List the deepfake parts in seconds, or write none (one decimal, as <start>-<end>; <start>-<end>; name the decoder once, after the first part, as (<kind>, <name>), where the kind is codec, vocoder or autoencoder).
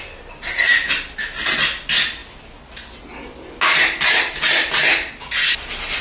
none